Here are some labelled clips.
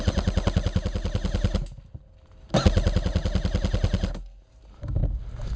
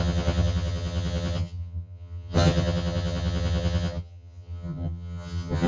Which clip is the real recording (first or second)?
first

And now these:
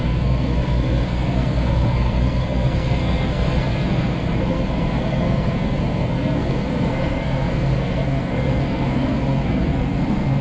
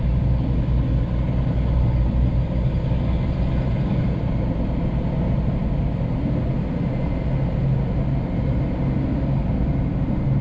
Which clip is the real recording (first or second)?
second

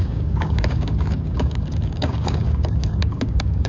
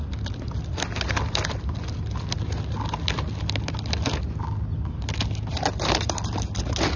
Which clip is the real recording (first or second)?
second